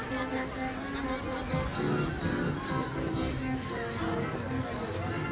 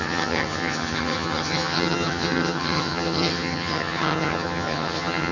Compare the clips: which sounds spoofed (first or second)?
second